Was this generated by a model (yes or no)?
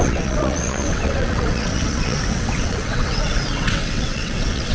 yes